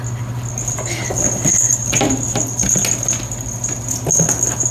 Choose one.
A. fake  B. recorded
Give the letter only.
B